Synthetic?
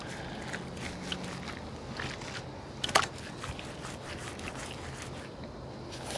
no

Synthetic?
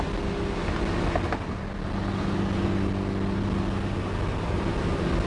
no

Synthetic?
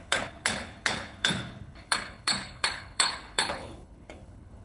yes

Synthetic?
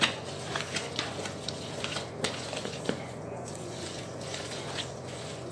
yes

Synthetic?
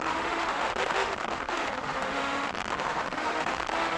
yes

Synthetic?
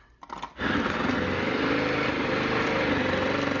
yes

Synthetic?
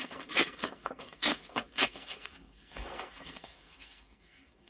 yes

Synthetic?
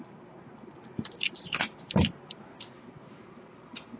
no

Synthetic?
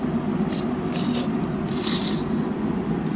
yes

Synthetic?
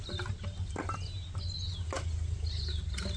no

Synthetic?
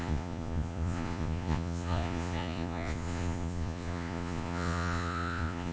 yes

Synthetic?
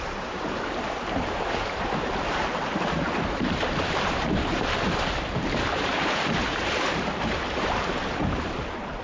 yes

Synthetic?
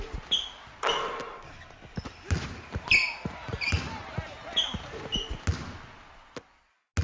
no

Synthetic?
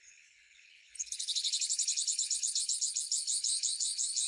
yes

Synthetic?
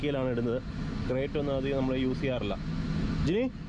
no